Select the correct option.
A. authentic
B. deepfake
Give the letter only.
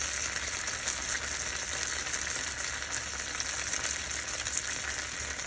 A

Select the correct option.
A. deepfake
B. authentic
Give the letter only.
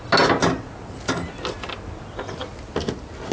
B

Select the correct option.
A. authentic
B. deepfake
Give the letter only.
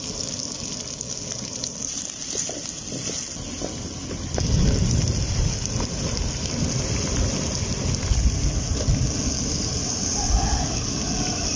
A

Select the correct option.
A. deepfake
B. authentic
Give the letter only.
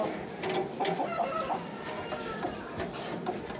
B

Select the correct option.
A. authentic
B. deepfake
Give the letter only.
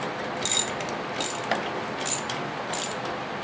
A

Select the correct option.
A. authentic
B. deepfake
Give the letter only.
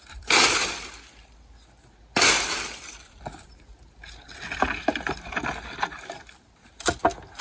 A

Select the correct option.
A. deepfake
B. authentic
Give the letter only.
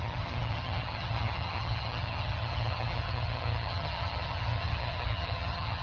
A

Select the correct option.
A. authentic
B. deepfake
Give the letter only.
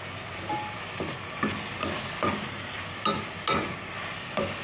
A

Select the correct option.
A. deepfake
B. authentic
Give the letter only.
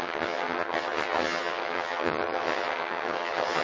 A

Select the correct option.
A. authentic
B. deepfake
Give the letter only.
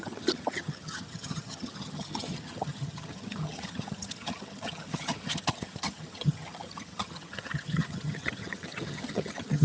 B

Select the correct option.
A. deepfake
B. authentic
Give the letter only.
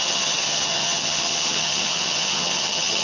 A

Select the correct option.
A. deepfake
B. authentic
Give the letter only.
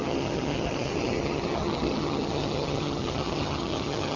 A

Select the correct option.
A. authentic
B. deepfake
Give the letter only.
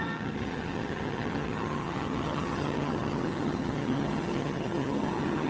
B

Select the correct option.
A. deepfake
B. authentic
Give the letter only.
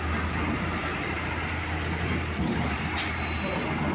B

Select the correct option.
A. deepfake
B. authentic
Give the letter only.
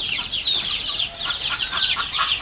B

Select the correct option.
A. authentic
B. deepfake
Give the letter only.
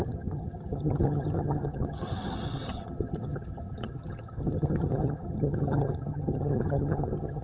B